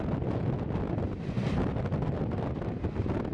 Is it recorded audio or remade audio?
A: recorded